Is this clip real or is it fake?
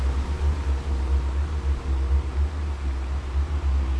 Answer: real